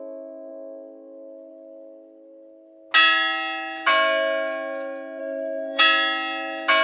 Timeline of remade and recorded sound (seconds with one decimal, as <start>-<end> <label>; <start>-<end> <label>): 0.0-5.2 recorded; 5.2-5.8 remade; 5.8-6.8 recorded